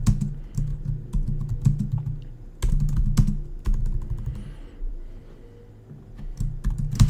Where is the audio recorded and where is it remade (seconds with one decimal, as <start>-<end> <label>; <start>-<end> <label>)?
0.0-7.1 recorded